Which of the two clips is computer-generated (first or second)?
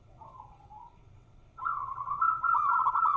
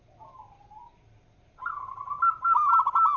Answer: first